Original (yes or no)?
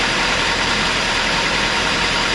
no